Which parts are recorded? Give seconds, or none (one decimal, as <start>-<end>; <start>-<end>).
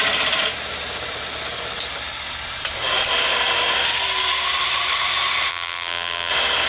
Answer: 0.0-5.5; 6.3-6.7